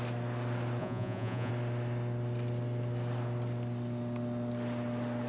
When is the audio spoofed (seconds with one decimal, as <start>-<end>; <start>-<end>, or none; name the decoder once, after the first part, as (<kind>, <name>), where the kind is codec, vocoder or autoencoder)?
0.8-1.5 (vocoder, Vocos)